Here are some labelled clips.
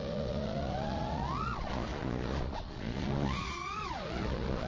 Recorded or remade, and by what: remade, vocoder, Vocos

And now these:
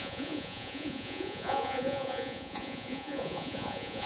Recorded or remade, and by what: remade, vocoder, Vocos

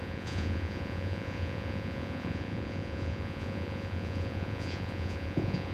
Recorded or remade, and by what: remade, vocoder, Vocos